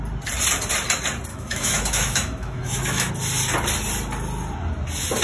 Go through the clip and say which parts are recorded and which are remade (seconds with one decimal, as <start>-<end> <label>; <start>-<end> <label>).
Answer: 0.0-1.3 recorded; 1.3-3.1 remade; 3.1-5.2 recorded